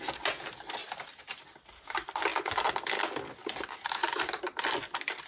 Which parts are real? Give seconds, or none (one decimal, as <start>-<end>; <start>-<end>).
0.0-0.8; 1.4-3.4; 4.4-5.3